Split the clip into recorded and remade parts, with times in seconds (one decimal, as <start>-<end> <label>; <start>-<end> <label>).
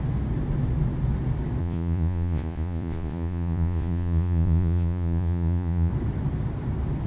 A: 0.0-1.6 recorded; 1.6-5.9 remade; 5.9-7.1 recorded